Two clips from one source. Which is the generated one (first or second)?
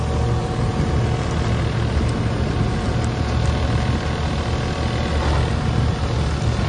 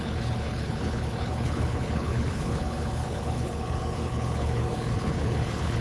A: second